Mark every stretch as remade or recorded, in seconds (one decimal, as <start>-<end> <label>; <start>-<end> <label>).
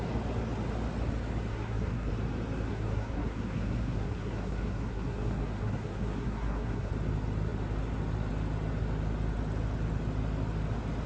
0.0-1.5 recorded; 1.5-2.1 remade; 2.1-2.7 recorded; 2.7-6.9 remade; 6.9-11.1 recorded